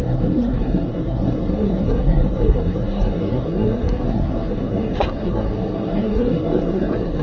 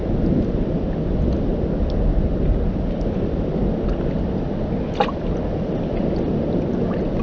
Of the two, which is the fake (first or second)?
first